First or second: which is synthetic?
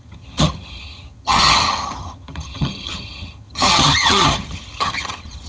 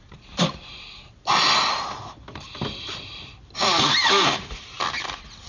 first